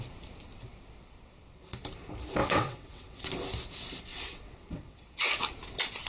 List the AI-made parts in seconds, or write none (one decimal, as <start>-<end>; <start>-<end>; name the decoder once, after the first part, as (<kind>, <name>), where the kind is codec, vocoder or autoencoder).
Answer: 2.4-3.3 (vocoder, WaveNeXt); 4.1-5.3